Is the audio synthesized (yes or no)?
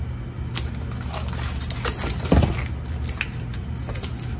no